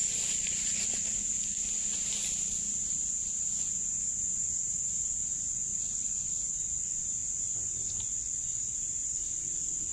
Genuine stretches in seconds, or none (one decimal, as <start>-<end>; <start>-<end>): 0.0-9.9